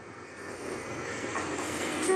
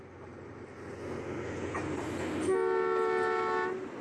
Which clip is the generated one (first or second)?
first